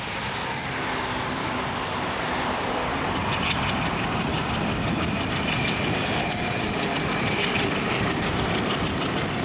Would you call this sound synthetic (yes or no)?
yes